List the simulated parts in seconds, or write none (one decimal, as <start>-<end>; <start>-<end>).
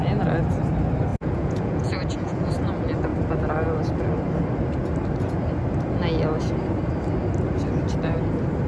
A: 1.1-2.5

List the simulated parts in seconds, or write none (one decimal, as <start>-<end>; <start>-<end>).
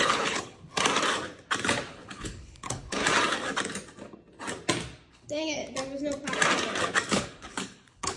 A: 0.0-0.7; 1.9-3.0; 5.1-5.6; 7.1-8.2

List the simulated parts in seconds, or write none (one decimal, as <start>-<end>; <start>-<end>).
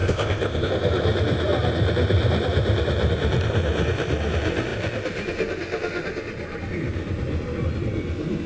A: 0.0-0.7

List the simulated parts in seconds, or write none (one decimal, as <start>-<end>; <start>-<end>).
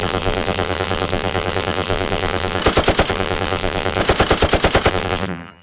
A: 0.0-2.6; 3.1-4.0; 4.9-5.6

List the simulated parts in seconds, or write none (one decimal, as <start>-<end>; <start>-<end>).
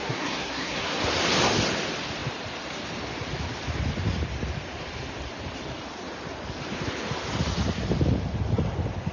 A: 0.0-1.0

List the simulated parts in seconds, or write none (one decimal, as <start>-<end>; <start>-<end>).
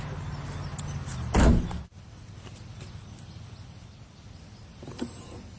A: none